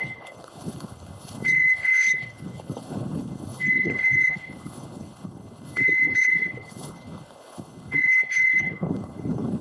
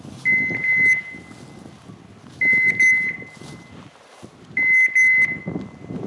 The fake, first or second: first